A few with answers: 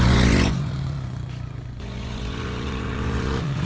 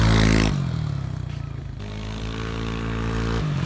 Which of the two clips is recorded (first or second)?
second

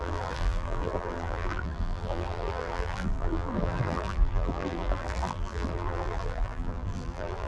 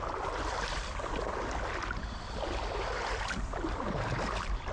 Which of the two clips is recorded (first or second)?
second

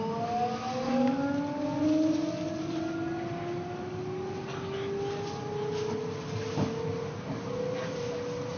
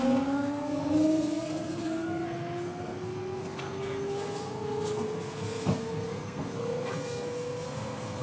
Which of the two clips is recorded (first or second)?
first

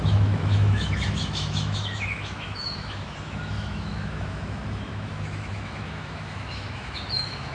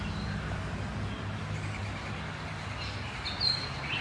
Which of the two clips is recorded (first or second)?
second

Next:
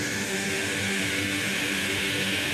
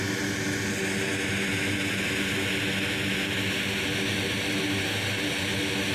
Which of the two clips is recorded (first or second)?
second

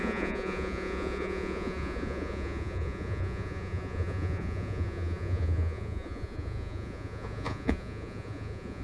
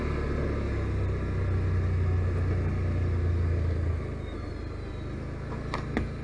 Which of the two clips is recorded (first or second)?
second